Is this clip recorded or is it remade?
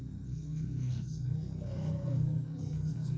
remade